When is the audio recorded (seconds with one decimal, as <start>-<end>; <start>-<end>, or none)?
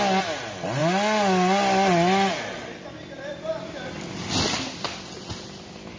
0.0-6.0